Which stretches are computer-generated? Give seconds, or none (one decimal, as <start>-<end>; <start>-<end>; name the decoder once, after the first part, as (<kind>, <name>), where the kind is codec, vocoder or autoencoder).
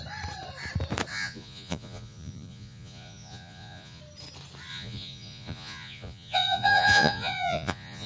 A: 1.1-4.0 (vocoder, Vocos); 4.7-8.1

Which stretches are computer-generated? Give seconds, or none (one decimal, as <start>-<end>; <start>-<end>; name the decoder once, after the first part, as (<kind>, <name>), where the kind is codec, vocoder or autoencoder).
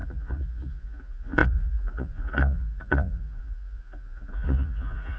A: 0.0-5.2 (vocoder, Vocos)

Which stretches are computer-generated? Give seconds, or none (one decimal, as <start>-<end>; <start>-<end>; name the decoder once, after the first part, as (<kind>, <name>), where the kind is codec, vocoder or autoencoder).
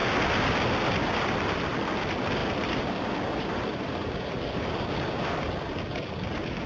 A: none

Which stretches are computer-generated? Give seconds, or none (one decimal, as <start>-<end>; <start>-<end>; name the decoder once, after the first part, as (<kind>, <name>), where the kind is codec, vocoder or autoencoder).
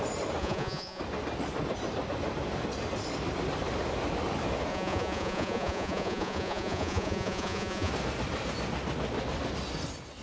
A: 0.4-1.0 (vocoder, Vocos); 4.7-7.9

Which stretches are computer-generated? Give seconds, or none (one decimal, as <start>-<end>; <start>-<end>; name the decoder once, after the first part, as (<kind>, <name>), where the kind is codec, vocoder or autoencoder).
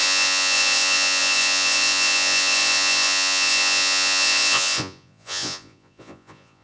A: 0.0-6.6 (vocoder, Vocos)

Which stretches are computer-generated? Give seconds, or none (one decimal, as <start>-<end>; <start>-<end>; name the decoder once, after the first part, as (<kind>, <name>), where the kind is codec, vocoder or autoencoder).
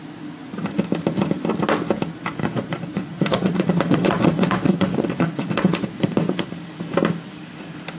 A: 2.4-6.5 (vocoder, Vocos)